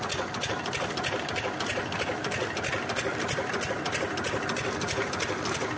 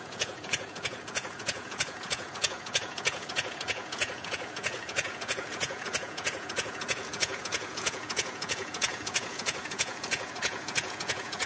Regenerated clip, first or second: second